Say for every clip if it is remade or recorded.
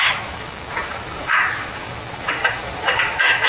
remade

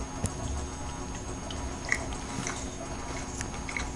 recorded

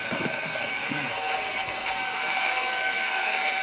remade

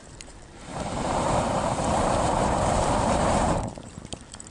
remade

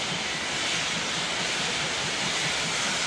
recorded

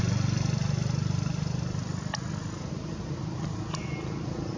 recorded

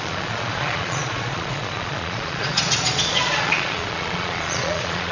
remade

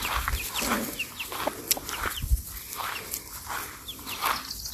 recorded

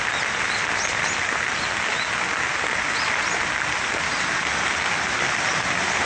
recorded